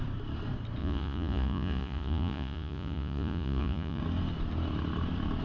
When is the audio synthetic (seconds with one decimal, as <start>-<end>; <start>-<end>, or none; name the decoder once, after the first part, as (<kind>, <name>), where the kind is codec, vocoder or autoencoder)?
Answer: 0.8-4.0 (vocoder, Vocos)